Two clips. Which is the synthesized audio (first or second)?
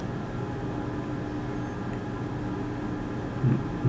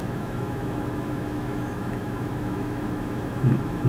second